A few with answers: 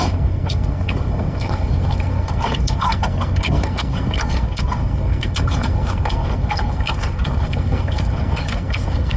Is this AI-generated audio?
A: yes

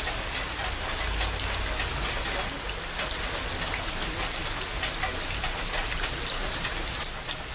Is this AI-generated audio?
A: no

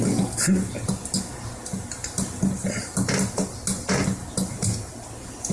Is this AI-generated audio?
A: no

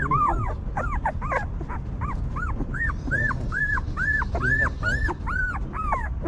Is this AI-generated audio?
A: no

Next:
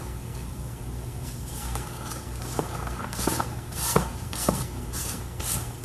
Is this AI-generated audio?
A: yes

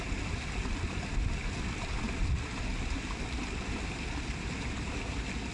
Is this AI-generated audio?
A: no